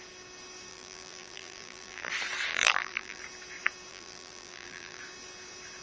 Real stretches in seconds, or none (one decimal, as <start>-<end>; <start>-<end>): 0.0-0.7; 2.1-2.5; 3.2-3.9; 5.0-5.8